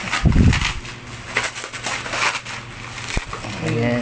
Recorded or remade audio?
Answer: recorded